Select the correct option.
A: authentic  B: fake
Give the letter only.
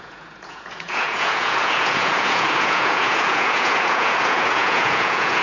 B